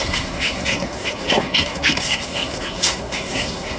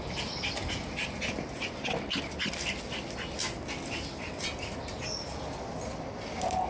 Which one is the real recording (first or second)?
second